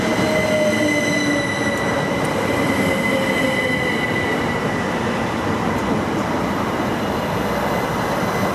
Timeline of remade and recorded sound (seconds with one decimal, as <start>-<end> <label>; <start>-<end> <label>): 0.0-4.3 recorded; 4.3-6.7 remade; 6.7-8.5 recorded